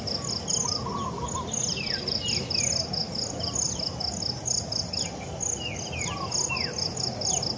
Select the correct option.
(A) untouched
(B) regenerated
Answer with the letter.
A